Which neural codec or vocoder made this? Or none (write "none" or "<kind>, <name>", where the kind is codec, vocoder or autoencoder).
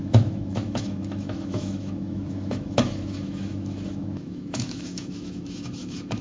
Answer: autoencoder, DAC-VAE